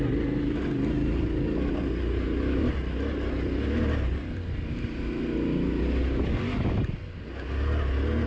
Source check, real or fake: real